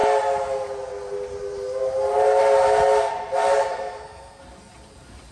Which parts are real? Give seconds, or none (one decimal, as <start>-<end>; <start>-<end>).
0.0-3.7; 4.4-5.3